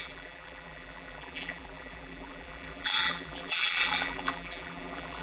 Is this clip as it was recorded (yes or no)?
no